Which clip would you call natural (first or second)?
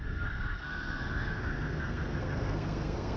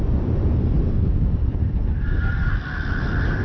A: second